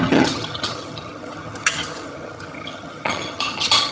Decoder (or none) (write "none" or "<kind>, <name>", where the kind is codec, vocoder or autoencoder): vocoder, HiFi-GAN